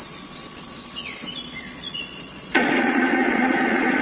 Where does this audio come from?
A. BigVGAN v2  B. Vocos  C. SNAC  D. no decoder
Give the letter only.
B